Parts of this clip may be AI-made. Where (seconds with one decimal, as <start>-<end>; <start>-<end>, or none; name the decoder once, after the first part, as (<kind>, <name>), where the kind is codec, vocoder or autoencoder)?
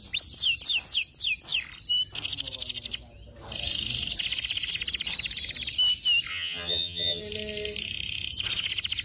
6.3-7.2 (vocoder, HiFi-GAN)